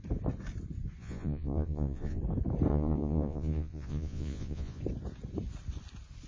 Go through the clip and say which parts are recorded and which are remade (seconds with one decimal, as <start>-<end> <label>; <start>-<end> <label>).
0.0-1.0 recorded; 1.0-2.2 remade; 2.2-2.7 recorded; 2.7-4.8 remade; 4.8-6.3 recorded